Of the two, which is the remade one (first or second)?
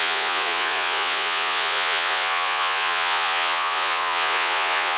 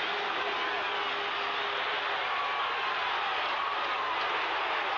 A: first